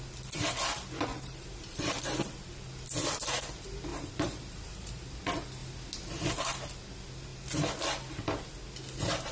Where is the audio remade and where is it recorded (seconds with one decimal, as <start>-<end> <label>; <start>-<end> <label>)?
0.0-1.1 recorded; 1.1-2.0 remade; 2.0-3.9 recorded; 3.9-5.1 remade; 5.1-9.3 recorded